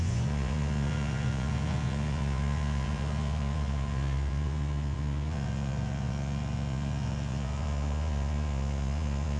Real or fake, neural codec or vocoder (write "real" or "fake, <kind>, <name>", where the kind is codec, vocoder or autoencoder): fake, vocoder, Vocos